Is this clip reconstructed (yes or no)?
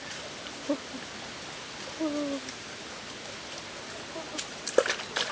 no